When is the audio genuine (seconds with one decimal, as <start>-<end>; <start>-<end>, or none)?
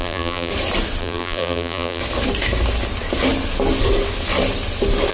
0.5-1.0; 2.0-5.1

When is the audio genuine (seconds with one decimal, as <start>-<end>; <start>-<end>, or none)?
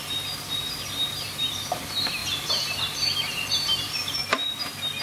0.0-2.2; 3.9-5.0